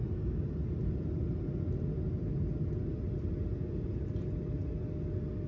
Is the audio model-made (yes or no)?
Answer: no